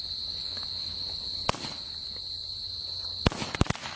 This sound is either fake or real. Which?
real